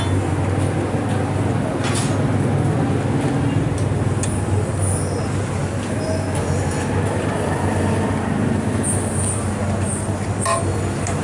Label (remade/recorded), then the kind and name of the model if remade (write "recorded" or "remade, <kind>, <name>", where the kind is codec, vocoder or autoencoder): recorded